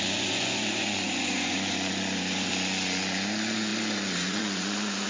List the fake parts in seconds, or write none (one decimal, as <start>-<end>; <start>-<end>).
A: 0.0-5.1